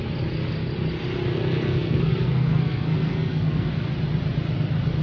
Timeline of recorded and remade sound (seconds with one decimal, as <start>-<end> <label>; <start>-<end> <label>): 0.0-1.3 recorded; 1.3-3.9 remade; 3.9-5.0 recorded